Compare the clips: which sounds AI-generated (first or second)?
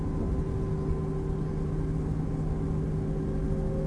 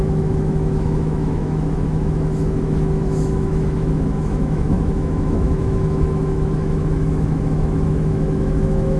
second